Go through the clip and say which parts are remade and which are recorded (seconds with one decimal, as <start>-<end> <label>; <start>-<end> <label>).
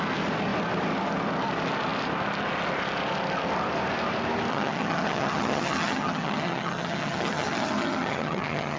0.0-4.5 recorded; 4.5-8.8 remade